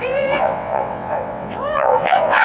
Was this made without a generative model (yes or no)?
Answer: no